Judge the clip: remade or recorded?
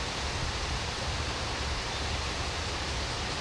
recorded